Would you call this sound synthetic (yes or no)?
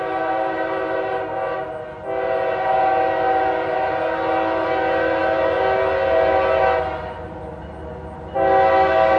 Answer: no